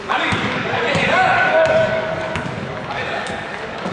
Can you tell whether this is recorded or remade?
remade